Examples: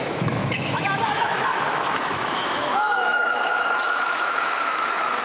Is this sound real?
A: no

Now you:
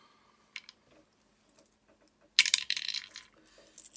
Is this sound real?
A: yes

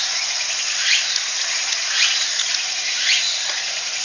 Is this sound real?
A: no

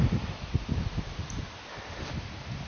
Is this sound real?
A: yes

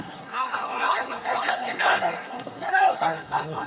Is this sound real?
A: no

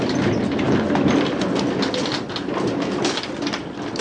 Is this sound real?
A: yes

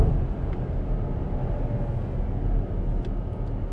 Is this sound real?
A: yes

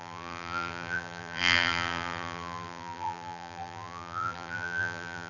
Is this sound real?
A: no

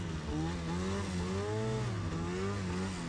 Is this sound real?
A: yes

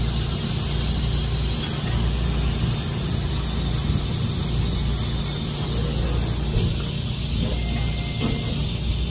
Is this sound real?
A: yes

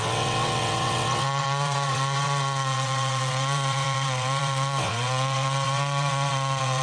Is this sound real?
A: no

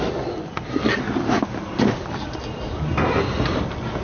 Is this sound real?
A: yes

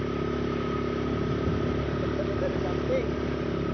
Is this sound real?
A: no